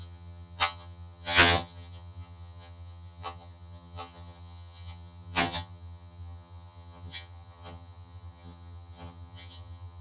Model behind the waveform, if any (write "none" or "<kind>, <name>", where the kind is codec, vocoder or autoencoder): vocoder, HiFi-GAN